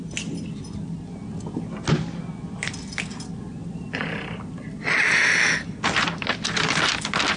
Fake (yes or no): no